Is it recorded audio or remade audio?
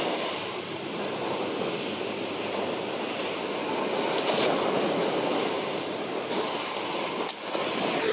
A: recorded